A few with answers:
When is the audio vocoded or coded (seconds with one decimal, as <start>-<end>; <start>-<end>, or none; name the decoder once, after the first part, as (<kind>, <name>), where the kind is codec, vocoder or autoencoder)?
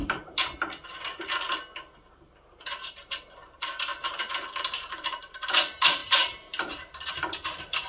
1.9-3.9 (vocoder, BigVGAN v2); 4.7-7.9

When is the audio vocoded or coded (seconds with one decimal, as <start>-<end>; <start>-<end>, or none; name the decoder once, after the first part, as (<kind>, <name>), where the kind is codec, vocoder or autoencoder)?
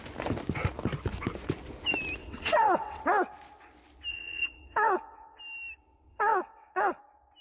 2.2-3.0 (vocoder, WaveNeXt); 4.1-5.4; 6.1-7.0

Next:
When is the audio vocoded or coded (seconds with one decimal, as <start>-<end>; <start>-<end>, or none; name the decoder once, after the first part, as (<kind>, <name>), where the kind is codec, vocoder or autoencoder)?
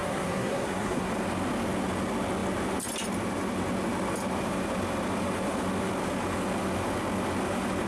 0.0-1.1 (codec, SNAC)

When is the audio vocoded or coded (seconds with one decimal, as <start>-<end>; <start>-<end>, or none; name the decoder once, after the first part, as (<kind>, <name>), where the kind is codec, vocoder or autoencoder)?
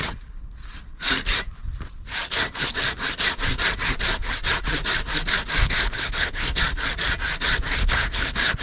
5.6-6.6 (codec, HILCodec); 7.8-8.6